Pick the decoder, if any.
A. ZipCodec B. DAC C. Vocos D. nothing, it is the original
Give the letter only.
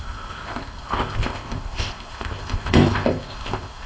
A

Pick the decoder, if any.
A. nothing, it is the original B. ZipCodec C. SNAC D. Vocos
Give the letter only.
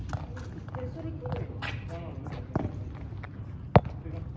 A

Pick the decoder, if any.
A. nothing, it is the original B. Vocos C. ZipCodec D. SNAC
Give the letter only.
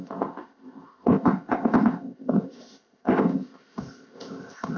C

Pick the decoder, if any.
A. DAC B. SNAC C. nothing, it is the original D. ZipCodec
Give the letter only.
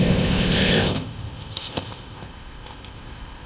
D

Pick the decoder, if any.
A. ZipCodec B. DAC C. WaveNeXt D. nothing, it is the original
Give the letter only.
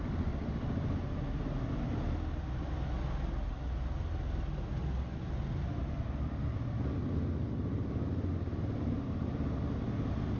D